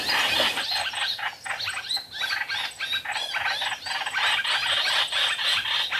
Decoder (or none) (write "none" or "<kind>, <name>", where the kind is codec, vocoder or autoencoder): none